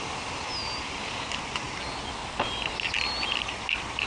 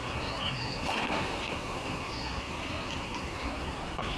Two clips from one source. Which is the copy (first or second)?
second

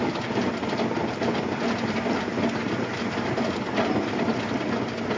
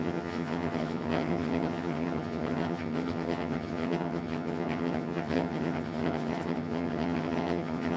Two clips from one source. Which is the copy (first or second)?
second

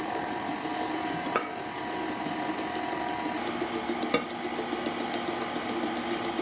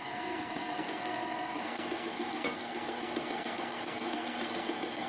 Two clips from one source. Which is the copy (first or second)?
second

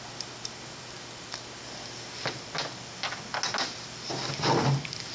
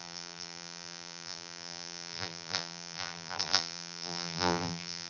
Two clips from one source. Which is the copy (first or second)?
second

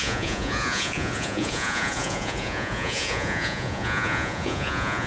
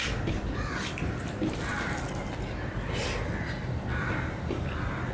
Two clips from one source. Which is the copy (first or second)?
first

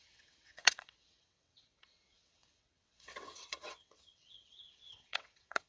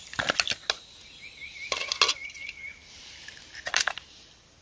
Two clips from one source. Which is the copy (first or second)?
first